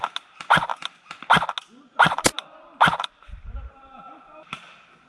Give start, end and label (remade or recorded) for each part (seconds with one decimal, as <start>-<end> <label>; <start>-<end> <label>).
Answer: 0.0-5.1 recorded